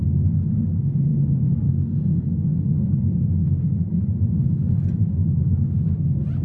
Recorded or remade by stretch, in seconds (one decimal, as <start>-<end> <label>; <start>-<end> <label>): 0.0-6.4 recorded